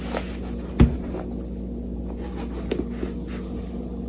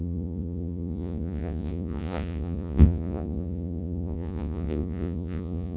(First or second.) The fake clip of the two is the second